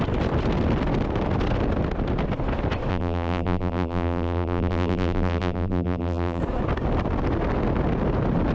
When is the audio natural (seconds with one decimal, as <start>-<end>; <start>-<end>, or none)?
0.0-2.9; 6.4-8.5